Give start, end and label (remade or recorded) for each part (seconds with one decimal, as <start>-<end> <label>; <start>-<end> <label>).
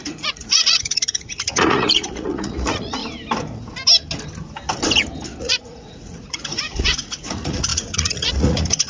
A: 0.0-3.0 remade; 3.0-5.4 recorded; 5.4-8.9 remade